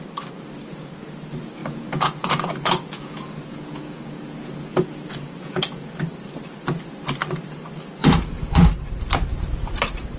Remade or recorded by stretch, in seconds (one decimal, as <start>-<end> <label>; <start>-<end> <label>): 0.0-1.6 recorded; 1.6-5.9 remade; 5.9-8.0 recorded; 8.0-8.7 remade; 8.7-10.2 recorded